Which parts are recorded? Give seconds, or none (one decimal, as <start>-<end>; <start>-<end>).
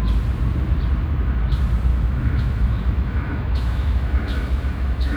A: 0.0-1.9